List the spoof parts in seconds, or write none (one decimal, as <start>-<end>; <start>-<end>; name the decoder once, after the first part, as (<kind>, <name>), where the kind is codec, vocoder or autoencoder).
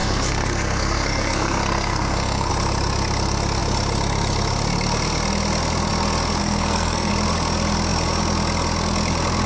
0.0-2.5 (codec, SNAC); 6.4-7.1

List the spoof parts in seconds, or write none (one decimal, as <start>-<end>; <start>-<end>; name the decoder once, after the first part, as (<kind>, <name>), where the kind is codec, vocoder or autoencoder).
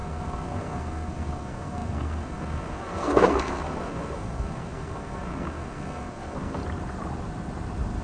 0.0-6.6 (codec, SNAC)